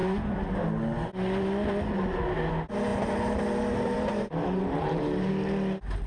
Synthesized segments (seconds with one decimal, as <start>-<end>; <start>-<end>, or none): 2.9-5.3